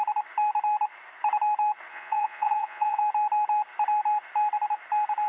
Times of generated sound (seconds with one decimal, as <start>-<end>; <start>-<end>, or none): 1.9-3.0